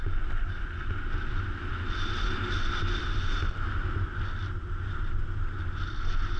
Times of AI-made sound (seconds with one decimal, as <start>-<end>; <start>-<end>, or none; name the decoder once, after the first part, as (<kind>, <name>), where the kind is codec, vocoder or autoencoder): none